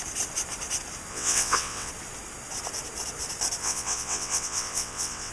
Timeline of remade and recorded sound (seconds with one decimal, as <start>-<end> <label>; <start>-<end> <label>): 0.0-1.1 recorded; 1.1-1.9 remade; 1.9-3.6 recorded; 3.6-5.3 remade